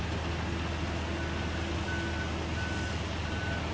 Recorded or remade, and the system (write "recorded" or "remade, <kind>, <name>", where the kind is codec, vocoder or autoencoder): recorded